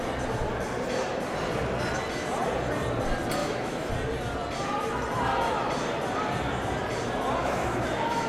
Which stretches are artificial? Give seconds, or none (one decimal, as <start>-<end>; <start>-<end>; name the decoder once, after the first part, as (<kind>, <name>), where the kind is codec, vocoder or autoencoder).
3.4-3.9 (autoencoder, DAC-VAE); 7.4-8.3

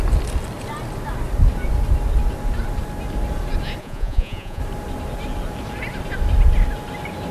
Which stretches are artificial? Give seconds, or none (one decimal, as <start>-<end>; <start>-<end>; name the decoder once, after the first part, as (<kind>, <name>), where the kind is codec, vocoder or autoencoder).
3.8-4.6 (vocoder, Vocos)

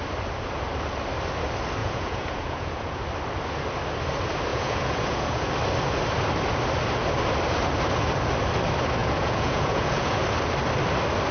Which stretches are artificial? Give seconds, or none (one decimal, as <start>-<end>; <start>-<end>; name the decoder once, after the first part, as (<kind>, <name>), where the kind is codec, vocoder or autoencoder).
1.8-3.0 (vocoder, Vocos); 4.5-5.5; 9.0-10.2

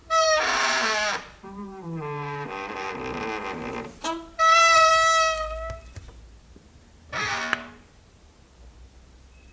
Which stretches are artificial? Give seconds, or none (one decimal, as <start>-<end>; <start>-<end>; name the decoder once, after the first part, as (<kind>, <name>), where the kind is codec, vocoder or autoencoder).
0.0-2.9 (vocoder, BigVGAN v2); 4.0-4.9

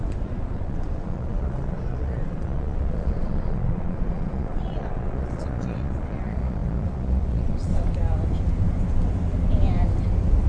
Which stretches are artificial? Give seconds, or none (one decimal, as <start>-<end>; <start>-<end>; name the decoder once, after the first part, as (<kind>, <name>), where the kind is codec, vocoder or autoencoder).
0.0-7.7 (vocoder, Vocos)

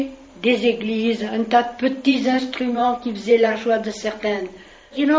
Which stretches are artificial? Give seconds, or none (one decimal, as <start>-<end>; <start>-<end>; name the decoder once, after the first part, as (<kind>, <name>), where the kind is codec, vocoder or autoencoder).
0.0-5.2 (vocoder, BigVGAN v2)

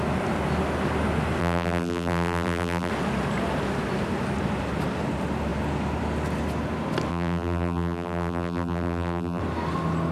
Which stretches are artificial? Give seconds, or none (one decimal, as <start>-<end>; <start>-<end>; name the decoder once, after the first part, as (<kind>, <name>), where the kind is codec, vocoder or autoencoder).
1.4-2.9 (vocoder, BigVGAN v2); 7.1-9.4